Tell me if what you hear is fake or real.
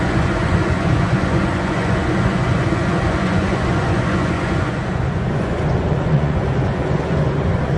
fake